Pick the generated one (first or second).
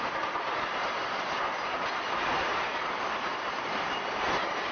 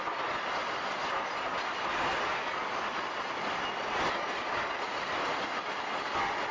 first